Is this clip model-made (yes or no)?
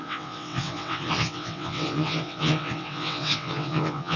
yes